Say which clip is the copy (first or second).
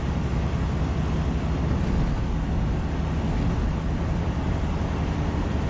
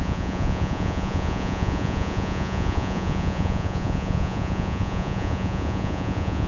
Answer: second